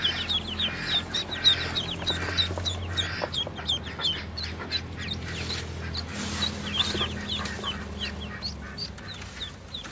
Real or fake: real